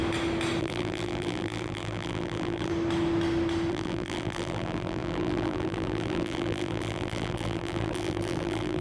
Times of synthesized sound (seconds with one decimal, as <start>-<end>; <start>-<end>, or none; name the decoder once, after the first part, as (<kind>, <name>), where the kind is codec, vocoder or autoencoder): 0.6-2.7 (vocoder, BigVGAN v2); 3.7-8.8